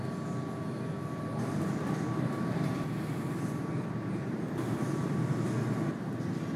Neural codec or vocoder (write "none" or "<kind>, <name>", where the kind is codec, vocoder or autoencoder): none